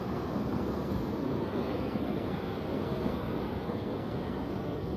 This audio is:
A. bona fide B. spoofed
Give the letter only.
B